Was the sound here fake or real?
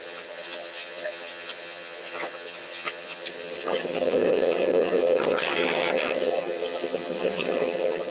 fake